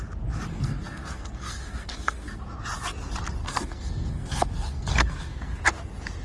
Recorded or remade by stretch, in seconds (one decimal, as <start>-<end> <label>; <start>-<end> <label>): 0.0-0.5 recorded; 0.5-2.4 remade; 2.4-3.4 recorded; 3.4-5.6 remade; 5.6-6.2 recorded